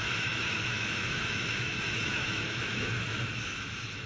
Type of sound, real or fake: fake